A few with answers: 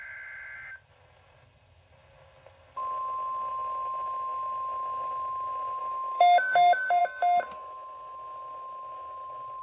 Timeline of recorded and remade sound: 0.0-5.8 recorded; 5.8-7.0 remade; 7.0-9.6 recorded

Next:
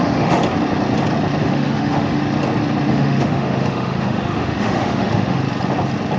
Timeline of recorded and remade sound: 0.0-0.4 remade; 0.4-1.4 recorded; 1.4-2.2 remade; 2.2-2.9 recorded; 2.9-5.4 remade; 5.4-6.2 recorded

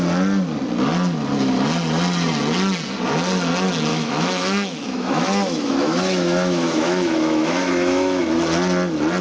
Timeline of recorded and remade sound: 0.0-3.9 recorded; 3.9-8.2 remade; 8.2-9.2 recorded

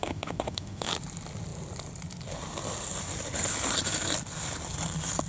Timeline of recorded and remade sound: 0.0-0.9 remade; 0.9-5.3 recorded

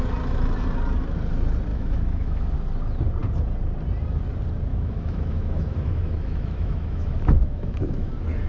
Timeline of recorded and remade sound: 0.0-1.7 recorded; 1.7-2.5 remade; 2.5-4.7 recorded; 4.7-8.1 remade; 8.1-8.5 recorded

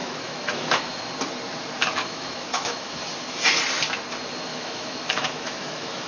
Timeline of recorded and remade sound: 0.0-1.0 remade; 1.0-2.0 recorded; 2.0-3.0 remade; 3.0-4.5 recorded; 4.5-6.1 remade

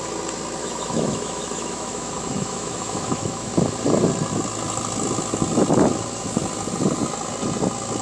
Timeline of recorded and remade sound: 0.0-0.6 recorded; 0.6-3.5 remade; 3.5-8.0 recorded